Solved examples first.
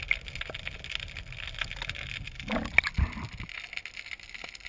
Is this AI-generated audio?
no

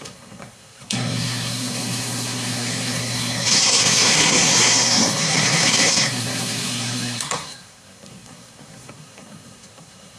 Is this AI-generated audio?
yes